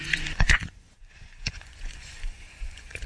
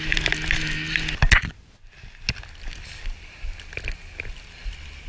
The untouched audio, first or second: second